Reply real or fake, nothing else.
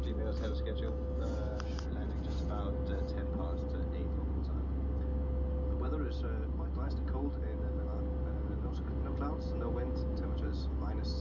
real